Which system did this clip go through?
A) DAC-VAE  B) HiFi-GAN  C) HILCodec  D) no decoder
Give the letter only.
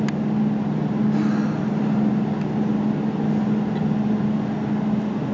D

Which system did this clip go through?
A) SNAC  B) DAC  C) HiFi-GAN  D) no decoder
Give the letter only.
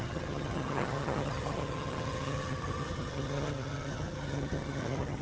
C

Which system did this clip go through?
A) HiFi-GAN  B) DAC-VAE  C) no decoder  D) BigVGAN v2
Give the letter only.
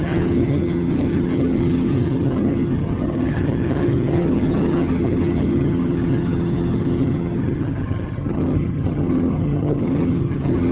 A